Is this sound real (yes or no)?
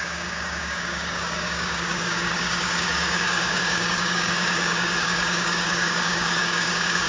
no